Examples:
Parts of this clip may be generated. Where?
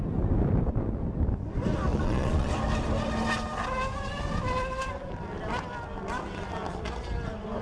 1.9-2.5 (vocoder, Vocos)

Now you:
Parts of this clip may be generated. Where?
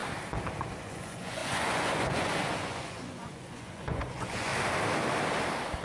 0.8-4.5 (vocoder, Vocos)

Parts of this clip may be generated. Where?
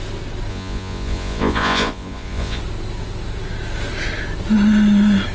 0.5-2.6 (vocoder, Vocos)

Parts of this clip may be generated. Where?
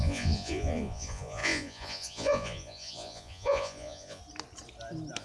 0.0-4.2 (vocoder, Vocos)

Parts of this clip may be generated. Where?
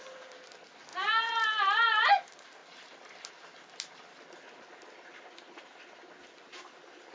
0.9-2.1 (vocoder, Vocos)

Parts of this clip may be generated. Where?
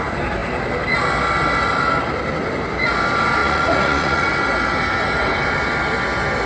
3.4-4.3 (vocoder, Vocos)